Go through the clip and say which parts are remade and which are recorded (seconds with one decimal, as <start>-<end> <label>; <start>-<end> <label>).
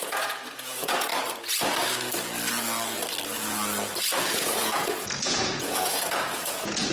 0.0-1.1 remade; 1.1-4.2 recorded; 4.2-6.9 remade